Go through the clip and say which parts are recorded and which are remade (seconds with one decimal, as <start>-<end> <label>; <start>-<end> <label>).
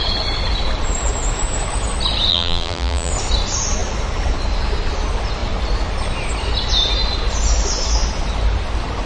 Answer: 0.0-2.3 recorded; 2.3-3.1 remade; 3.1-9.1 recorded